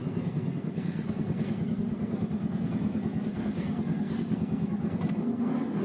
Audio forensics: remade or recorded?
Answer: remade